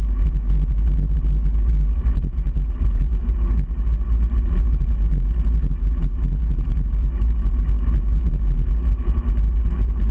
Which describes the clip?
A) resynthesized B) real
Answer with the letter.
B